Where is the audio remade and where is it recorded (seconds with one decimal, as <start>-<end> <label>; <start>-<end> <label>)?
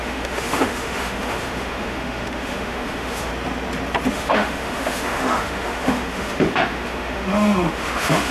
0.0-3.3 remade; 3.3-4.1 recorded; 4.1-8.3 remade